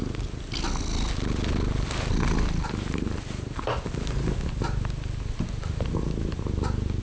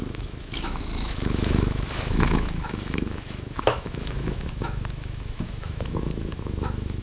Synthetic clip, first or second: second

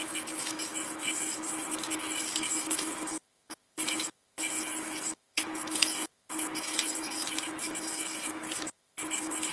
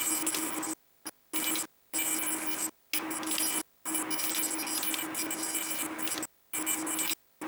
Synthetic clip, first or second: first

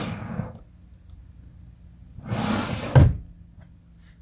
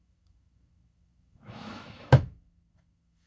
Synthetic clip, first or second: second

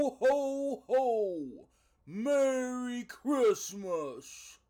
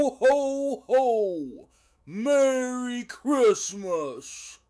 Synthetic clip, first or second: second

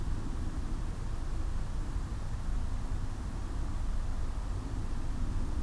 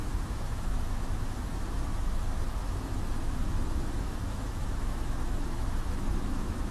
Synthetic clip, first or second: second